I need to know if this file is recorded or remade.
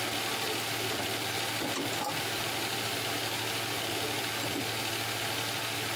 recorded